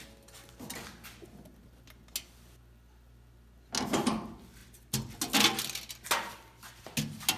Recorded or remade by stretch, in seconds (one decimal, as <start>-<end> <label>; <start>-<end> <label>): 0.0-7.4 recorded